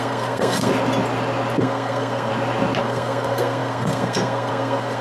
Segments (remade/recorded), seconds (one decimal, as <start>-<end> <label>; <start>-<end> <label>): 0.0-0.7 remade; 0.7-1.6 recorded; 1.6-2.3 remade; 2.3-2.8 recorded; 2.8-5.0 remade

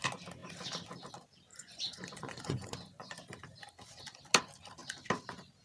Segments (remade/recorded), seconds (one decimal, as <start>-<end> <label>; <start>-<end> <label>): 0.0-1.5 recorded; 1.5-3.1 remade; 3.1-5.6 recorded

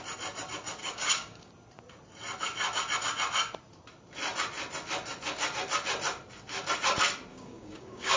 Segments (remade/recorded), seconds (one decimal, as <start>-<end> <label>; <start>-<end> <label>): 0.0-0.8 recorded; 0.8-1.5 remade; 1.5-7.3 recorded; 7.3-8.2 remade

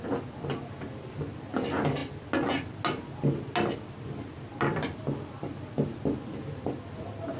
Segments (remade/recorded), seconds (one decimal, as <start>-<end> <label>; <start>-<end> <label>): 0.0-7.4 recorded